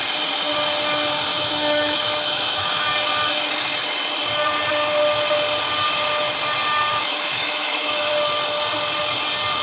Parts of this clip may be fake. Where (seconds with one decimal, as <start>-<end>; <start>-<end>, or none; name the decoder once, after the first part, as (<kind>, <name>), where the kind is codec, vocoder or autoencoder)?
1.3-2.9 (autoencoder, DAC-VAE); 6.9-8.1